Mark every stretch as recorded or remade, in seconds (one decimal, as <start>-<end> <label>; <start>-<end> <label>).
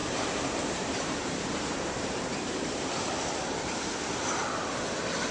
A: 0.0-3.2 remade; 3.2-5.3 recorded